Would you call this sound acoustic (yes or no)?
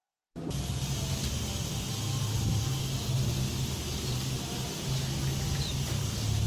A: yes